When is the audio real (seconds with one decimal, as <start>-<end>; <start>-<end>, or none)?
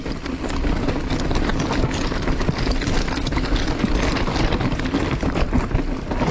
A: 0.0-6.3